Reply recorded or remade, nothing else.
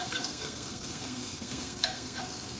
remade